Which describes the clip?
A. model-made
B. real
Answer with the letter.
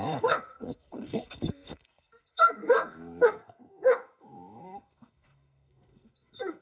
A